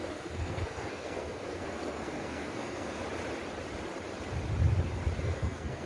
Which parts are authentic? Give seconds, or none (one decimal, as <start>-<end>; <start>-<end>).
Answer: 3.0-5.2